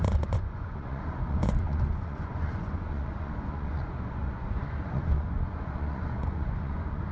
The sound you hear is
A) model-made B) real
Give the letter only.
A